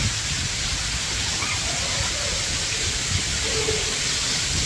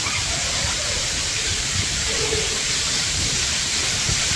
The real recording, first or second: first